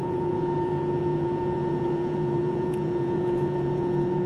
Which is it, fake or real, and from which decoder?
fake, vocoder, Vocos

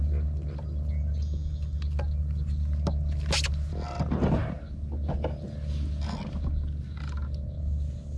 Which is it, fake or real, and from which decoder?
real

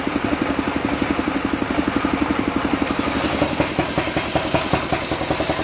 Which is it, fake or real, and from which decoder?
fake, vocoder, BigVGAN v2